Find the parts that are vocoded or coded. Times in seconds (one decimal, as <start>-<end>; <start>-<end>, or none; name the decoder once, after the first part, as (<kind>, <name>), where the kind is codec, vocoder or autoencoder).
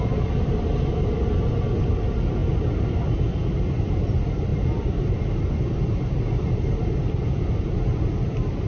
none